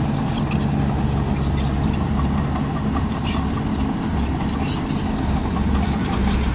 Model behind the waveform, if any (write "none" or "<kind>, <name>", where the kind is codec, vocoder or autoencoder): none